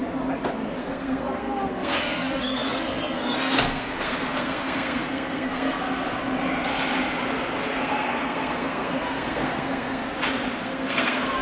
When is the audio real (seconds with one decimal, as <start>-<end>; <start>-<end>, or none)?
0.0-0.8; 5.8-7.8; 10.0-10.6